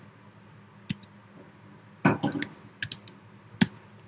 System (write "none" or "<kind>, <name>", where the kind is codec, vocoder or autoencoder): none